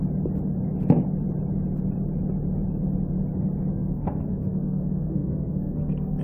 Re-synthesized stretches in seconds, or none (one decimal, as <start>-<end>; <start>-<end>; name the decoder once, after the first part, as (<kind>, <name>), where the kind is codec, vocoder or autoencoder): 3.7-6.2 (codec, SNAC)